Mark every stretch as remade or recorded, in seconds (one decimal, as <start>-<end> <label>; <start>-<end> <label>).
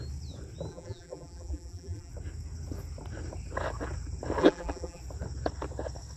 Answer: 0.0-0.7 recorded; 0.7-2.1 remade; 2.1-4.4 recorded; 4.4-5.0 remade; 5.0-6.2 recorded